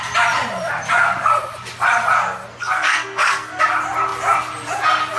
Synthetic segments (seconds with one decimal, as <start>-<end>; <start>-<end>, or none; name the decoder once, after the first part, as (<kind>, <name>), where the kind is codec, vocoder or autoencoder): 2.5-3.6 (codec, SNAC)